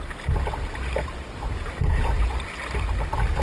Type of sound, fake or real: real